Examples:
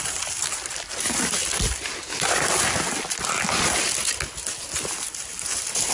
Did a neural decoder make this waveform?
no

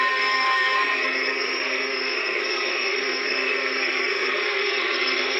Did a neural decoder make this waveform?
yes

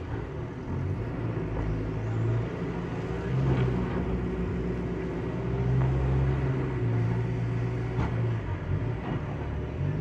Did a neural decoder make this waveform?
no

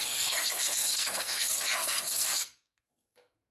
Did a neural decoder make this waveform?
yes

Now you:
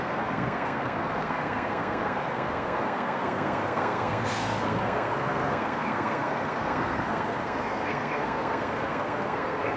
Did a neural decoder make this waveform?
yes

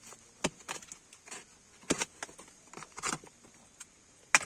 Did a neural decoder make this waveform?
no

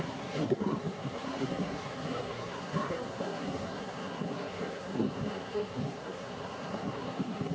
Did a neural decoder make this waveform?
yes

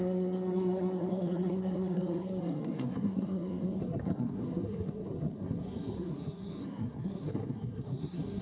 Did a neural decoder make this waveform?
yes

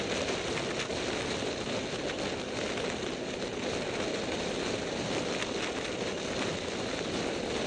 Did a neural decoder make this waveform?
no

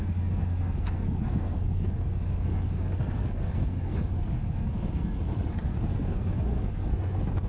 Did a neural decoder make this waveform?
yes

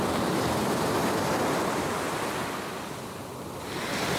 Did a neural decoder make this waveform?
no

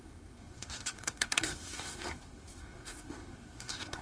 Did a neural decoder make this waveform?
yes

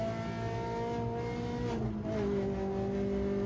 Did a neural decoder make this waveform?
no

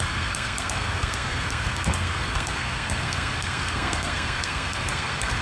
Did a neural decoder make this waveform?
yes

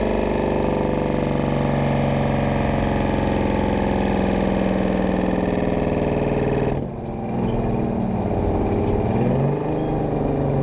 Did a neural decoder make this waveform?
no